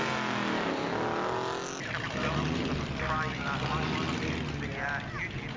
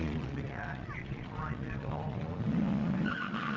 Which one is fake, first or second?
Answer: second